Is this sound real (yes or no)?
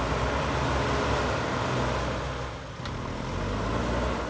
yes